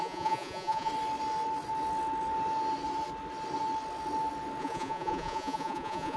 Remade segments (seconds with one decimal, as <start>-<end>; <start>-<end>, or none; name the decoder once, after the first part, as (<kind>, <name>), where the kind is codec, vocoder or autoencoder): 0.0-0.9 (vocoder, Vocos); 4.6-6.2